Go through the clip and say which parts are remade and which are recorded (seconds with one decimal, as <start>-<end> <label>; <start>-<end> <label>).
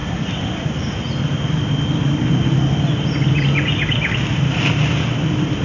0.0-5.6 recorded